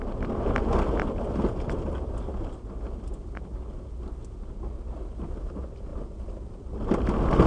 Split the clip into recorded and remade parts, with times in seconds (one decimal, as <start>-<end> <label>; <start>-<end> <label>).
0.0-7.5 recorded